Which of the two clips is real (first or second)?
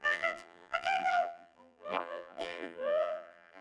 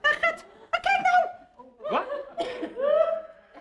second